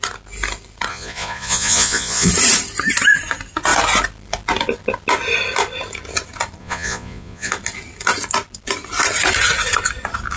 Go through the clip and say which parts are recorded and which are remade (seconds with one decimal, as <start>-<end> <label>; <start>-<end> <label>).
0.0-0.9 recorded; 0.9-2.3 remade; 2.3-6.6 recorded; 6.6-7.5 remade; 7.5-10.4 recorded